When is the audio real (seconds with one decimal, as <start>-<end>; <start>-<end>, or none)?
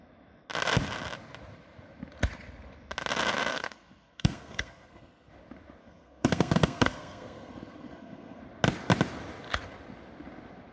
0.0-3.5; 5.3-5.8; 8.4-10.7